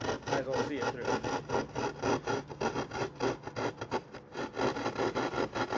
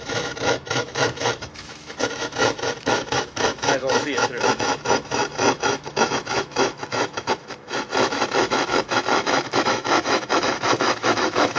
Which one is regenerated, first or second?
second